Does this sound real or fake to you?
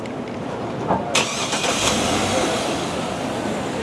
fake